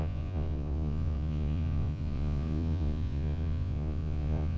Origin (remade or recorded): remade